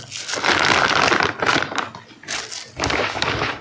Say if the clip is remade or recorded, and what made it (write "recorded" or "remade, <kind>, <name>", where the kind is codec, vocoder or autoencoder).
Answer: recorded